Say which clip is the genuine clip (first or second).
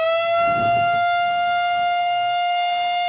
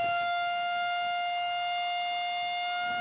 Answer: second